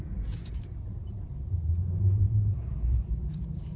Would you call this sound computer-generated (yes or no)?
yes